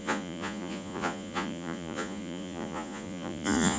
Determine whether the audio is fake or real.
fake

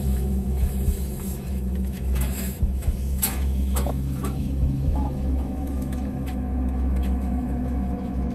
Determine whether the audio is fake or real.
fake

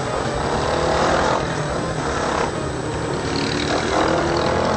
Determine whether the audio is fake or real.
real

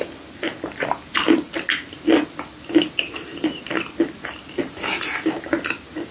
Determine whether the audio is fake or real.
real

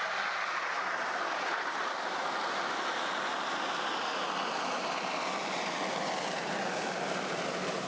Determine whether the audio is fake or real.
real